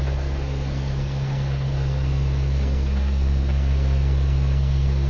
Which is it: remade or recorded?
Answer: remade